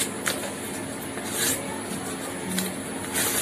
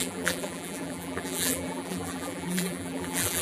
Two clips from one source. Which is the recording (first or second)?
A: first